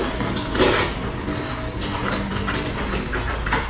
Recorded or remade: recorded